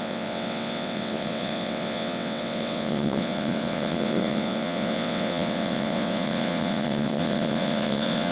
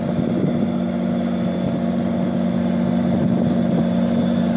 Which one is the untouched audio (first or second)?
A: second